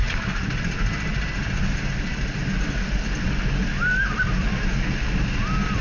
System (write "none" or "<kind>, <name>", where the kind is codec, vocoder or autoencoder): none